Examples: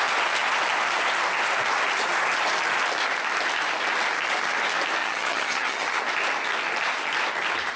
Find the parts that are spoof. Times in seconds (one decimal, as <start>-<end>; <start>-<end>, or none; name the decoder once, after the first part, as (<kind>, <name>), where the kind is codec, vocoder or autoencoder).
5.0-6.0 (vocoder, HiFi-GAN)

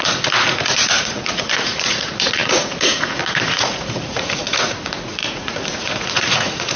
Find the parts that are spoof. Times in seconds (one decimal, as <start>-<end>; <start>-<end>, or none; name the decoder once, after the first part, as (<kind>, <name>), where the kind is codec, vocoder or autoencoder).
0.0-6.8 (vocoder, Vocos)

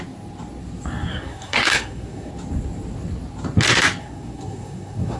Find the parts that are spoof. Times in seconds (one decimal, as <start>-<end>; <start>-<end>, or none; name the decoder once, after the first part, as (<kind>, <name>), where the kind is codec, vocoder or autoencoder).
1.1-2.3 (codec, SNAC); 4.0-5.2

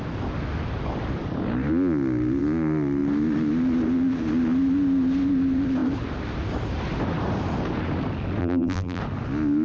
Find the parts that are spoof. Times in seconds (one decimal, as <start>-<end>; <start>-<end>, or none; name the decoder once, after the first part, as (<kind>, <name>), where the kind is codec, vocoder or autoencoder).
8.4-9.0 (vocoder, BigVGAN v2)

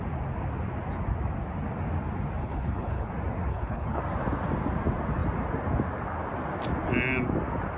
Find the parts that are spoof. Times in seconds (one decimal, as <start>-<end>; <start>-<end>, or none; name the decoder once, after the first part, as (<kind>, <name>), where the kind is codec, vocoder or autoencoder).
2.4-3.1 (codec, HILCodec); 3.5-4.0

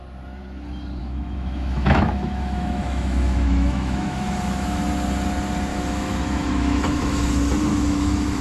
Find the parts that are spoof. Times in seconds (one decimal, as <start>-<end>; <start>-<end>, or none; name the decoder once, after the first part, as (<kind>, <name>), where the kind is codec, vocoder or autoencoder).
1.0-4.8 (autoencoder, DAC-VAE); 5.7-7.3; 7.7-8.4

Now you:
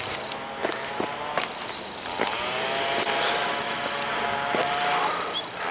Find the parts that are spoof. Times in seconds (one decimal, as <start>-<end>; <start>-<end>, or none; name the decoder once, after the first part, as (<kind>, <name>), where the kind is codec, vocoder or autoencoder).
none